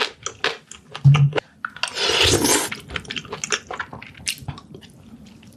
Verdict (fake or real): real